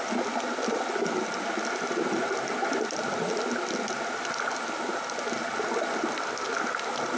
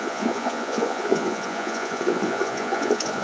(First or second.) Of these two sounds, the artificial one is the second